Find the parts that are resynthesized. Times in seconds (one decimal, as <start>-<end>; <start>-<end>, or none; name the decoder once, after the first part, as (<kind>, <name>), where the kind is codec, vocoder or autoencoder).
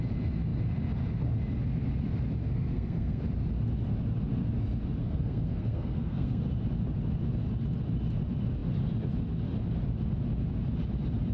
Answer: 2.4-3.2 (codec, SNAC); 5.0-6.4